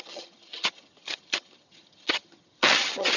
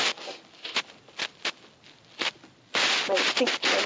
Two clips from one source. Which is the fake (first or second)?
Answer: first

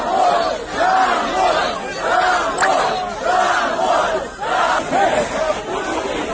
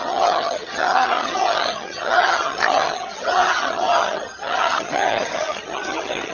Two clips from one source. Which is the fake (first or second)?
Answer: second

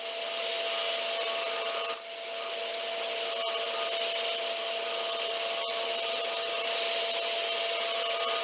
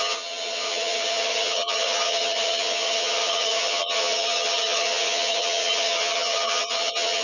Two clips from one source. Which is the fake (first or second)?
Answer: second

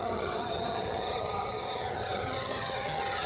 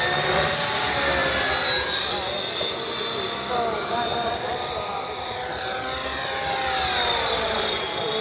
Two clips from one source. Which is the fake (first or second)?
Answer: first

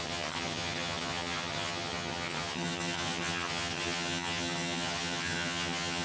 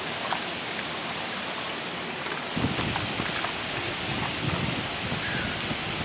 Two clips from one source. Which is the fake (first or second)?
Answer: first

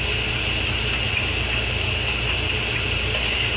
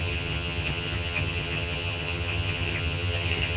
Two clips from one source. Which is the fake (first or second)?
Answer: second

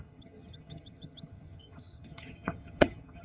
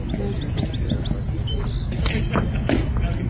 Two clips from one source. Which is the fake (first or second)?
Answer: first